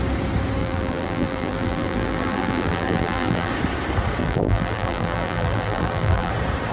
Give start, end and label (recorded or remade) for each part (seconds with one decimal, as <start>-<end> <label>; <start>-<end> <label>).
0.0-0.6 recorded; 0.6-3.5 remade; 3.5-4.2 recorded; 4.2-6.3 remade; 6.3-6.7 recorded